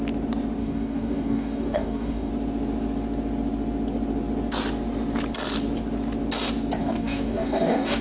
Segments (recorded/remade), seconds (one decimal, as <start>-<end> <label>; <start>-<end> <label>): 0.0-0.6 recorded; 0.6-2.3 remade; 2.3-6.8 recorded; 6.8-8.0 remade